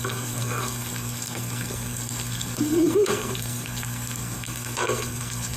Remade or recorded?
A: remade